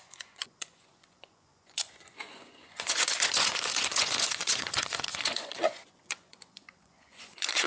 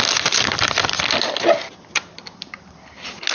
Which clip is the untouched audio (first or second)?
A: second